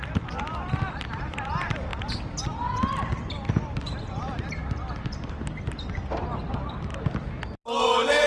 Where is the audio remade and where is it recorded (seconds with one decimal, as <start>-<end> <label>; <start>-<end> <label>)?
0.0-8.3 recorded